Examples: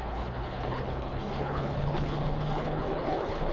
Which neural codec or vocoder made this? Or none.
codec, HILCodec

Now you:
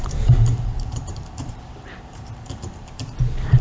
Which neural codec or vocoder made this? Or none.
vocoder, BigVGAN v2